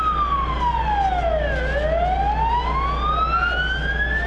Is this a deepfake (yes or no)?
no